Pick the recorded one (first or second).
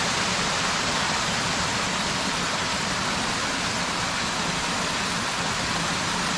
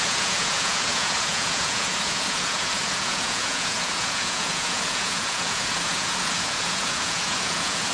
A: first